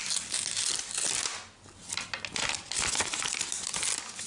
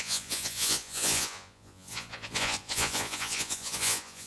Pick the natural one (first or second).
first